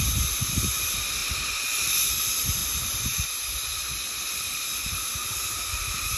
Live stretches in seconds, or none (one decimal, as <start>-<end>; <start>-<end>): 0.0-6.2